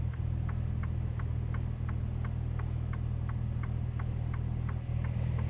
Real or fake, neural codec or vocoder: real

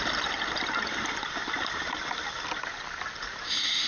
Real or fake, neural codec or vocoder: real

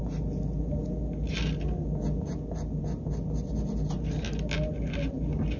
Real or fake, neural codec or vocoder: real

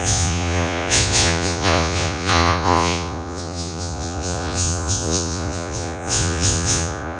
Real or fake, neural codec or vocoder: fake, vocoder, Vocos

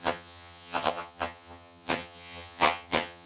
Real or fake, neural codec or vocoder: fake, vocoder, HiFi-GAN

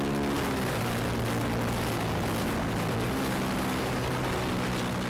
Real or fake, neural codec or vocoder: real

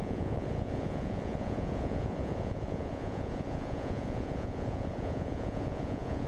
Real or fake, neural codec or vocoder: fake, vocoder, Vocos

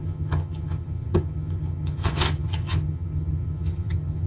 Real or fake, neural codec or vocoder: fake, vocoder, HiFi-GAN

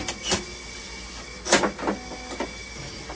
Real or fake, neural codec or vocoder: real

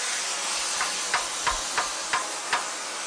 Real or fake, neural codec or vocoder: real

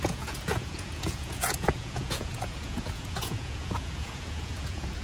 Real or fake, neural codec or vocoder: fake, vocoder, Vocos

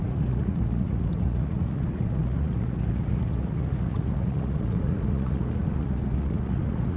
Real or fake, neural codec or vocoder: fake, vocoder, Vocos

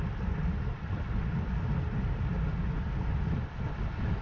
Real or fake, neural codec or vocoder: real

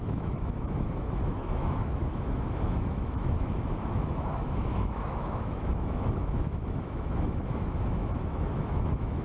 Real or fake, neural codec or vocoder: fake, autoencoder, DAC-VAE